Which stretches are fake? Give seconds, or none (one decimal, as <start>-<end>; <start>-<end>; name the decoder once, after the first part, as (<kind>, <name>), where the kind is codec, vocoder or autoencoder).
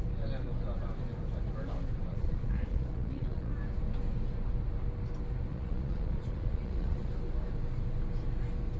2.1-3.5 (vocoder, Vocos); 5.5-7.1